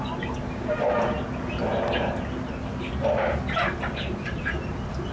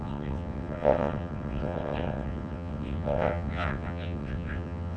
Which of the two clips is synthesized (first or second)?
second